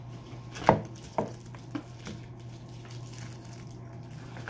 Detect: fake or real real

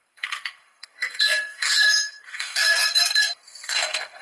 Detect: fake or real fake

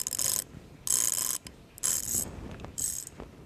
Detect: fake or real real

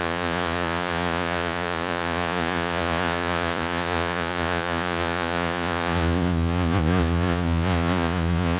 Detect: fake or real fake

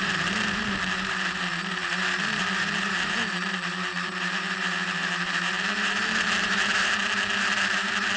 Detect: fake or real fake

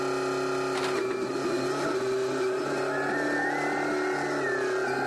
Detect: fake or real real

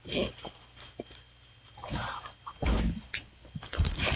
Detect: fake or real real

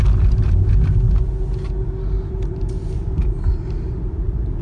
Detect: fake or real real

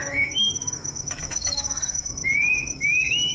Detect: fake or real fake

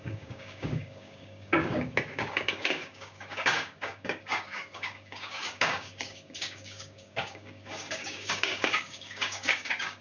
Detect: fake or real fake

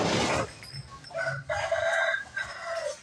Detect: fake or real real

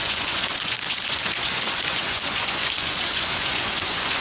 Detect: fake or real fake